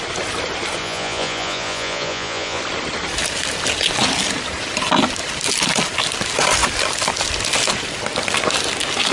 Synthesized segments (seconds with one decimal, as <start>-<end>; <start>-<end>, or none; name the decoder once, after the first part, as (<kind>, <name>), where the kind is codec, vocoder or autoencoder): 0.8-2.6 (vocoder, Vocos)